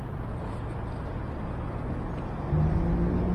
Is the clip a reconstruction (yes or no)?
no